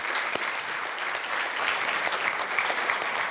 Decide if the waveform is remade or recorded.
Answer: recorded